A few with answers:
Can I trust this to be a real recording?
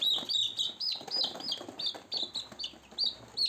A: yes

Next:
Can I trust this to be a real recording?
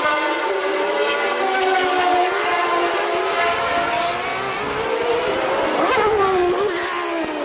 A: yes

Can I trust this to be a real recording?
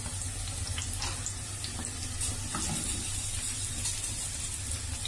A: yes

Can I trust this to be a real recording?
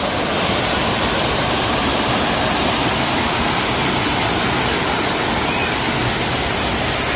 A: yes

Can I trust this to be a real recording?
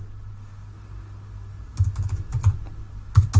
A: yes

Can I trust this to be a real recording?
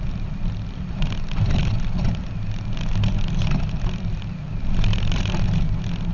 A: yes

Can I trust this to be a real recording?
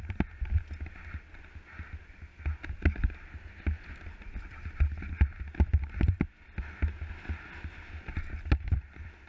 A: yes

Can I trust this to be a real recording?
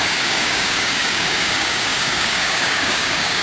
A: no